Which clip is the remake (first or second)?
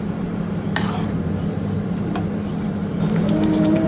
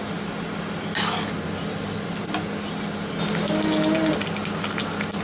first